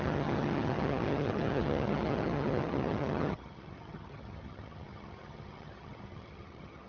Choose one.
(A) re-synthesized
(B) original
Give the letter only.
A